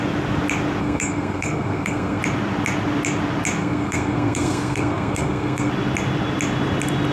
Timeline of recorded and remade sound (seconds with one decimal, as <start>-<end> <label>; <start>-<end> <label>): 0.0-0.8 recorded; 0.8-2.2 remade; 2.2-3.6 recorded; 3.6-5.7 remade; 5.7-7.1 recorded